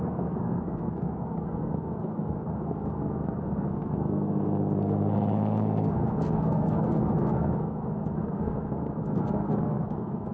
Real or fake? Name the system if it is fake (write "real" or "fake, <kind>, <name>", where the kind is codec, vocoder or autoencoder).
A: fake, codec, SNAC